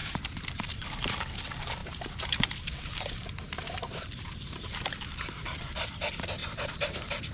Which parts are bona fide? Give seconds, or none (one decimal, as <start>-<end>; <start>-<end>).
1.2-1.8; 4.6-7.3